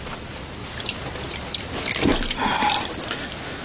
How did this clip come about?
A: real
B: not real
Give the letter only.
A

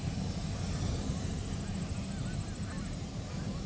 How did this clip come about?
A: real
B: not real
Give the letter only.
A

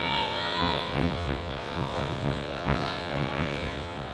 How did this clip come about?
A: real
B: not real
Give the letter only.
B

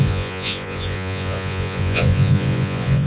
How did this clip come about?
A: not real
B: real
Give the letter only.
A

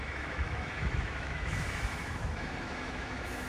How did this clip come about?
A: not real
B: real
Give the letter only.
A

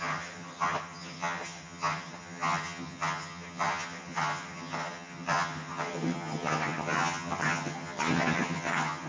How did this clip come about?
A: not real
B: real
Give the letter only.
A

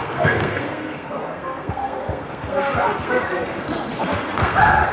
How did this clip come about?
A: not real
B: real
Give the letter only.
A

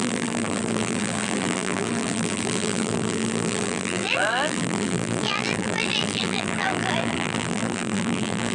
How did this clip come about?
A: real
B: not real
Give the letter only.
B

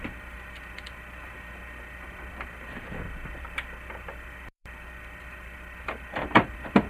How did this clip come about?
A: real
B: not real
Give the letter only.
B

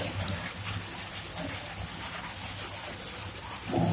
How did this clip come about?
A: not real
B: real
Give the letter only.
B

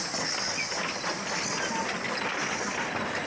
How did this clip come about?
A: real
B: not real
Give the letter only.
A